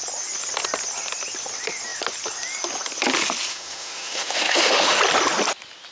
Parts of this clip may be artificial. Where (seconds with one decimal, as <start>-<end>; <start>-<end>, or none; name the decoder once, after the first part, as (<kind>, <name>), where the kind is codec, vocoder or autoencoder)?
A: 3.5-5.0 (autoencoder, DAC-VAE)

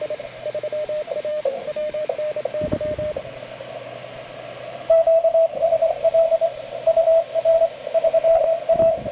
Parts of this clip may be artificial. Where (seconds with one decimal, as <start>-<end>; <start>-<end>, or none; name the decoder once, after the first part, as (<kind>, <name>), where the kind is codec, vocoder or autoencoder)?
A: 1.3-2.0 (autoencoder, DAC-VAE)

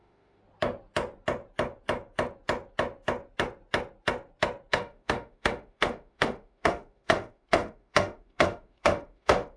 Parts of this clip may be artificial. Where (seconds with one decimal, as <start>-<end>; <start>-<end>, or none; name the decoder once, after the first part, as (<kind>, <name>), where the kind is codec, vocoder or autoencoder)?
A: 0.0-0.4 (autoencoder, DAC-VAE); 4.7-9.6